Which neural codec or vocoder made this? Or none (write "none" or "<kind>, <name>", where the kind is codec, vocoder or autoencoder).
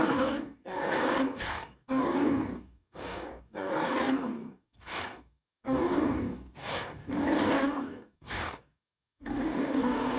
codec, DAC